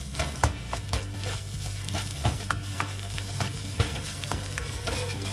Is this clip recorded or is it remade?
remade